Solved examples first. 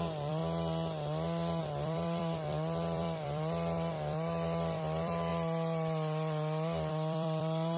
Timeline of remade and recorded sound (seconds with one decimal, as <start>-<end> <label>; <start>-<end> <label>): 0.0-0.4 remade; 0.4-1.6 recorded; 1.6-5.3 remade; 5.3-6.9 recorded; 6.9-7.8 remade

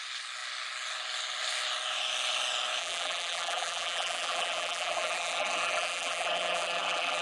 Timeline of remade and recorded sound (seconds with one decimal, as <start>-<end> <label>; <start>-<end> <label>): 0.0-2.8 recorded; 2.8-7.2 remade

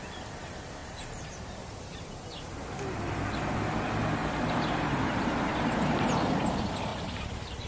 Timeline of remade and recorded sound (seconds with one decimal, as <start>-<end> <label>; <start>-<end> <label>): 0.0-0.8 recorded; 0.8-1.4 remade; 1.4-4.2 recorded; 4.2-6.2 remade; 6.2-6.9 recorded; 6.9-7.7 remade

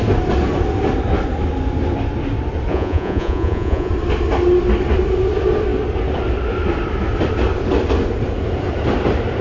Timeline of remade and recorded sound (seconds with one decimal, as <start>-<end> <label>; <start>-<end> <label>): 0.0-2.7 recorded; 2.7-3.9 remade; 3.9-9.4 recorded

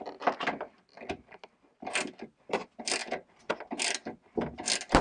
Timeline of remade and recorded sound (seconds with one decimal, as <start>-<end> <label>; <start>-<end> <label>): 0.0-5.0 recorded

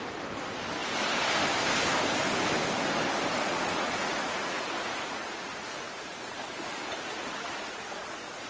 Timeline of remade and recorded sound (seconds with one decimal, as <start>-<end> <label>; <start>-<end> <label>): 0.0-3.5 recorded; 3.5-8.5 remade